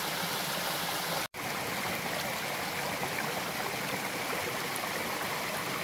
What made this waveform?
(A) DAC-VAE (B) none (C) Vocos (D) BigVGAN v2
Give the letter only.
B